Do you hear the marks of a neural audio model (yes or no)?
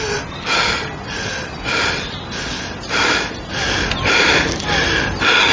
no